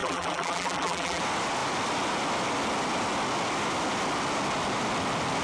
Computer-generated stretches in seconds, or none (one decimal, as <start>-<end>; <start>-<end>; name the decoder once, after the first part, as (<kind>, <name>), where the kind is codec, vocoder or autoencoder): 0.0-1.2 (vocoder, BigVGAN v2)